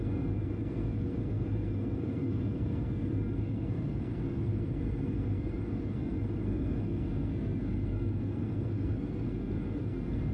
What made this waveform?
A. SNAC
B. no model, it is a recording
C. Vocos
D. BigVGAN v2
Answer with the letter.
A